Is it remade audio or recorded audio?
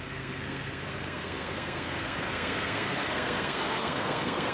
remade